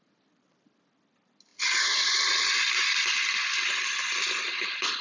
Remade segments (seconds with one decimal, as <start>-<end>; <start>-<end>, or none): none